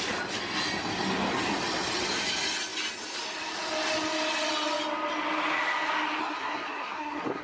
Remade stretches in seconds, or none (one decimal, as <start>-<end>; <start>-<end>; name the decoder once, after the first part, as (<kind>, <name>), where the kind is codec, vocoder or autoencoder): 6.2-7.4 (codec, SNAC)